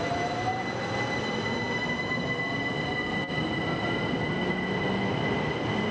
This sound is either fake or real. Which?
real